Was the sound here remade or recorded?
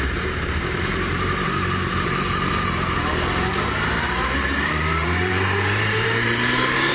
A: remade